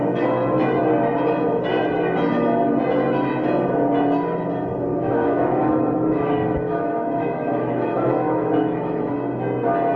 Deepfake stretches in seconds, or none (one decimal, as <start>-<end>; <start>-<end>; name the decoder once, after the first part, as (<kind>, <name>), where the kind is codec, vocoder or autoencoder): 4.9-9.1 (autoencoder, DAC-VAE)